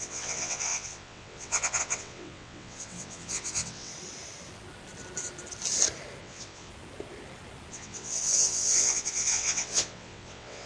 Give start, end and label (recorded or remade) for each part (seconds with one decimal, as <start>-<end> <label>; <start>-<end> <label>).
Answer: 0.0-3.9 remade; 3.9-6.2 recorded; 6.2-6.7 remade; 6.7-7.7 recorded; 7.7-10.7 remade